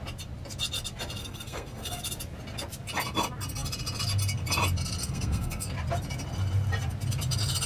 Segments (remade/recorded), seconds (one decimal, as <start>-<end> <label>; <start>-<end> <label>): 0.0-1.2 recorded; 1.2-2.0 remade; 2.0-5.0 recorded; 5.0-5.7 remade; 5.7-7.7 recorded